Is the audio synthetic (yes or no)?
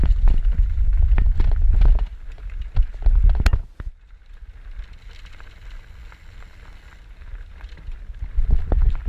no